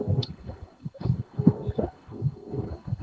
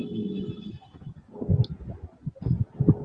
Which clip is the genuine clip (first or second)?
second